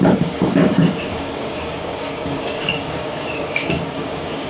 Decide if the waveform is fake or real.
fake